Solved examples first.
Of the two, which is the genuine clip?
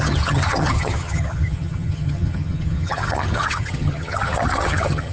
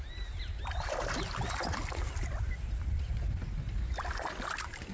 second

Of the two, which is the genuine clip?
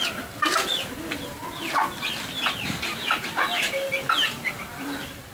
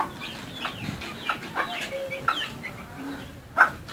second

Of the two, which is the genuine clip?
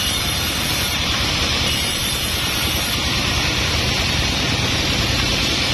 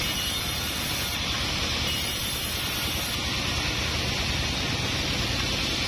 second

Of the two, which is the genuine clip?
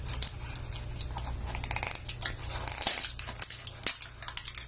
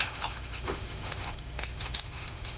first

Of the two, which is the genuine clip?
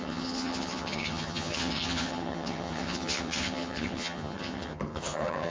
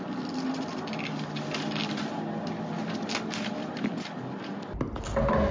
second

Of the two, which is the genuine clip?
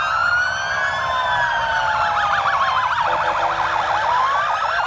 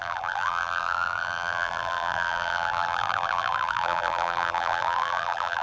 first